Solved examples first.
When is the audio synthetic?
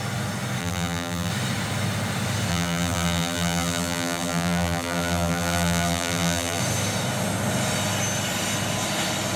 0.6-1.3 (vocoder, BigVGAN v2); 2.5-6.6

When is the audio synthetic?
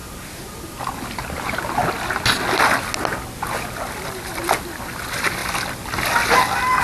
4.1-5.4 (vocoder, BigVGAN v2)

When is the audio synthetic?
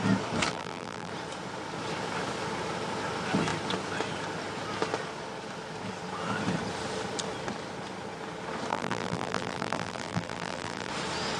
0.5-1.1 (vocoder, BigVGAN v2); 8.7-10.9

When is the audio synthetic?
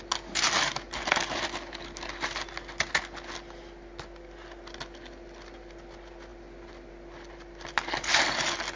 none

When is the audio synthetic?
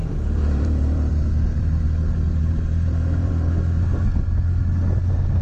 0.0-1.1 (vocoder, BigVGAN v2); 2.4-3.3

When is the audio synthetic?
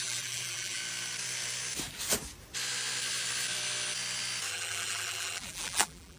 0.0-0.8 (vocoder, BigVGAN v2); 4.5-6.2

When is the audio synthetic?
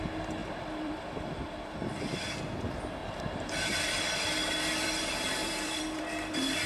0.4-2.4 (vocoder, BigVGAN v2); 3.0-5.0; 5.4-6.7